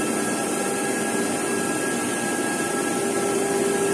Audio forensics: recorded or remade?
recorded